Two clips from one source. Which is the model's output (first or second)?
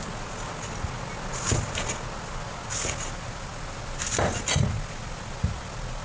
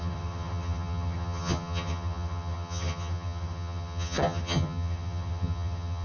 second